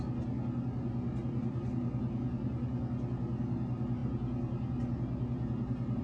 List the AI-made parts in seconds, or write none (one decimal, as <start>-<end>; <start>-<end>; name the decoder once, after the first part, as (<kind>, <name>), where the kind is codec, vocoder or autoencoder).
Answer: none